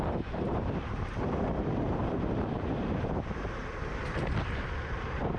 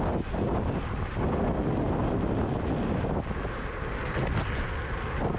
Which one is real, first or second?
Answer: second